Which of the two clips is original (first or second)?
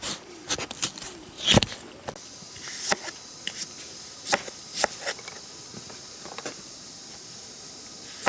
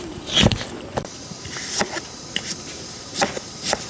first